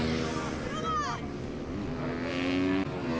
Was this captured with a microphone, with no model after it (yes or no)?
yes